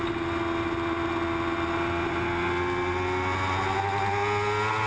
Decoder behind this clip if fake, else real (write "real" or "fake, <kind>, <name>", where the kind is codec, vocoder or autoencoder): real